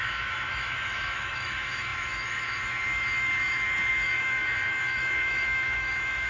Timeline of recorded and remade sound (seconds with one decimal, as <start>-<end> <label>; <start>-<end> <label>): 0.0-6.3 remade